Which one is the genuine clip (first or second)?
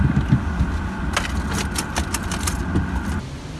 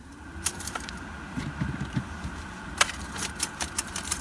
first